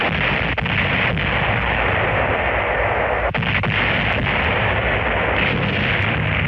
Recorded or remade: recorded